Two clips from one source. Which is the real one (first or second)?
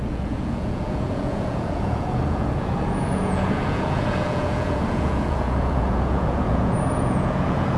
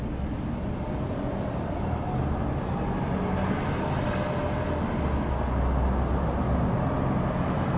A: second